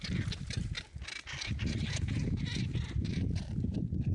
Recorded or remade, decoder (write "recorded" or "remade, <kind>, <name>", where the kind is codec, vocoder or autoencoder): remade, vocoder, BigVGAN v2